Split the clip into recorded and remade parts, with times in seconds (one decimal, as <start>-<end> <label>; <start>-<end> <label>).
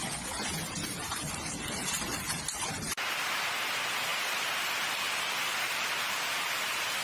0.0-7.0 recorded